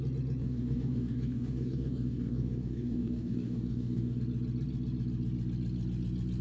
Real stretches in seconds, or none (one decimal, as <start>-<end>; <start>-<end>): 0.0-0.4; 4.2-6.4